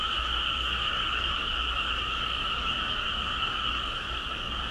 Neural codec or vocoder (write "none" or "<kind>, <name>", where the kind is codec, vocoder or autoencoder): codec, DAC